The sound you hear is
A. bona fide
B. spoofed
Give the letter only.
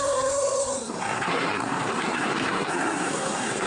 B